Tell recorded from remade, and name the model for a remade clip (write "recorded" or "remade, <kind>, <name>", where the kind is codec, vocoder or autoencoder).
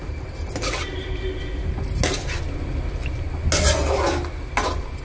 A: recorded